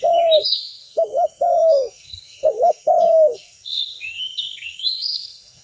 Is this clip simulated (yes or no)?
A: yes